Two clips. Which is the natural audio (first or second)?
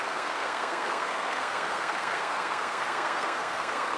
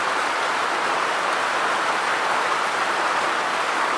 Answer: second